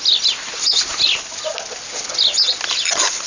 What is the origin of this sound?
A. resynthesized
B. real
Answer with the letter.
B